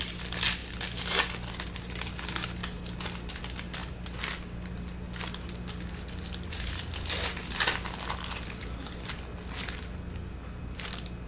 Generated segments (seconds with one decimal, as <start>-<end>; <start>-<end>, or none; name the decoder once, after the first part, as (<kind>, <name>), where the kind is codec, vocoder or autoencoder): none